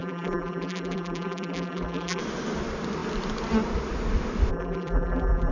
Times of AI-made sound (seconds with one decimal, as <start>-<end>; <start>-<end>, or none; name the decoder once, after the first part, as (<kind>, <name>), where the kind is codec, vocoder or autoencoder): 0.0-2.2 (vocoder, BigVGAN v2); 4.5-5.5